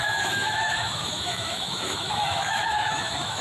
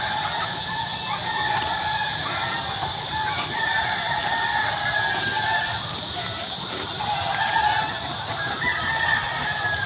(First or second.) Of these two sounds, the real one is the second